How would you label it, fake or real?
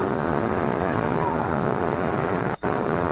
fake